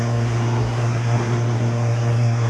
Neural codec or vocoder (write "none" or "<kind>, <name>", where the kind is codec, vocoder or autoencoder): codec, SNAC